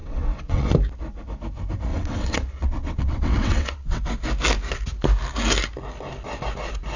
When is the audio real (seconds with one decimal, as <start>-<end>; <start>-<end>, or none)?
0.7-1.9; 4.0-7.0